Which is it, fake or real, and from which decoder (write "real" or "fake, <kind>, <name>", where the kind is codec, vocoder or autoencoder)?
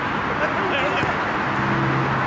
real